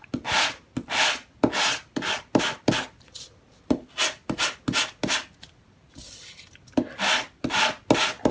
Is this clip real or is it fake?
real